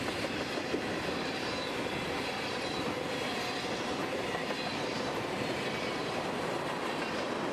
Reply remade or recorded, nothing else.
remade